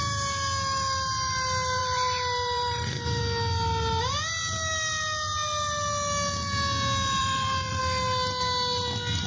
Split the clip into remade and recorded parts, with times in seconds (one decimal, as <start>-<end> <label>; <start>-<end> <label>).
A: 0.0-1.8 recorded; 1.8-3.2 remade; 3.2-7.2 recorded; 7.2-7.8 remade; 7.8-9.3 recorded